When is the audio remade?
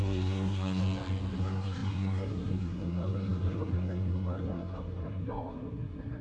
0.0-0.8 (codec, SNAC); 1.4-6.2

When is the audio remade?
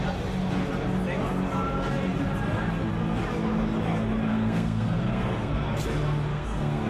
4.3-5.5 (codec, SNAC); 6.3-6.9